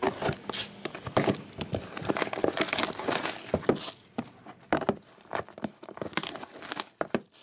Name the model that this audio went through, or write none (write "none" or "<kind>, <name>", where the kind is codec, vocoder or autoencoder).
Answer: none